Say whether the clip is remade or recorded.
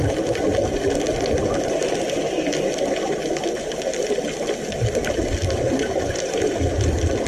recorded